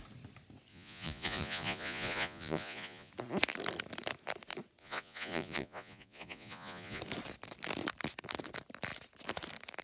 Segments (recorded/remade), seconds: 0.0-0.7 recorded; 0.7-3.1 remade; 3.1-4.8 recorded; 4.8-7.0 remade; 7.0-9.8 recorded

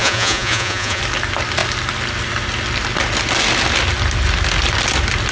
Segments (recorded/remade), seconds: 0.0-1.0 remade; 1.0-5.3 recorded

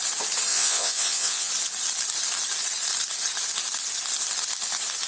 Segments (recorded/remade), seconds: 0.0-0.5 recorded; 0.5-1.5 remade; 1.5-5.1 recorded

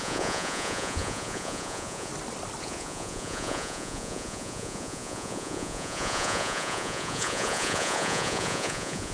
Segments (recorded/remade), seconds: 0.0-2.1 remade; 2.1-2.6 recorded; 2.6-9.1 remade

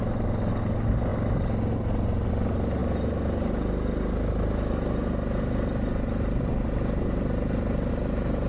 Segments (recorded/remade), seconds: 0.0-8.5 recorded